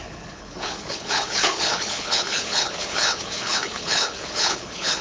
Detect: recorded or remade remade